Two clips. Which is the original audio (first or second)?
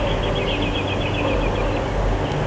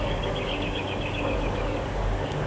first